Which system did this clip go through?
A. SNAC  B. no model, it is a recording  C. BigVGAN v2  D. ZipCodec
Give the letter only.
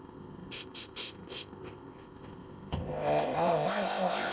D